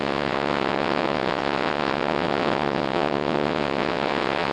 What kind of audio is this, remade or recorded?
remade